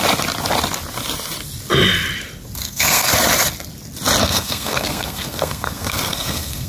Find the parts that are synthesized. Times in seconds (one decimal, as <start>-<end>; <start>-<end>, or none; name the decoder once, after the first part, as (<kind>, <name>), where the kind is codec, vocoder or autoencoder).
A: 2.6-3.1 (codec, SNAC); 4.2-6.7

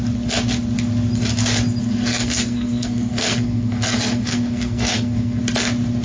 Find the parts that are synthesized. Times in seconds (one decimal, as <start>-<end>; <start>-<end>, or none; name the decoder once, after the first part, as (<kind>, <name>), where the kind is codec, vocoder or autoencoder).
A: 1.8-5.4 (codec, SNAC)